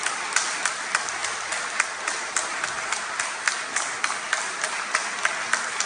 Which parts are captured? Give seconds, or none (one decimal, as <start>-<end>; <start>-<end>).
0.0-5.9